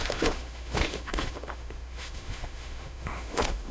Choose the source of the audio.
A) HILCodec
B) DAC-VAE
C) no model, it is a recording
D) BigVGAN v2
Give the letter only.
B